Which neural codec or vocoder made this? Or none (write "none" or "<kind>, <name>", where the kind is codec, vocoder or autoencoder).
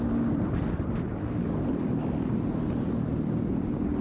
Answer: none